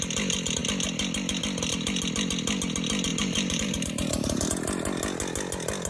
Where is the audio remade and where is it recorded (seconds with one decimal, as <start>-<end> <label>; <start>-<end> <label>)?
0.0-3.1 recorded; 3.1-4.5 remade; 4.5-5.9 recorded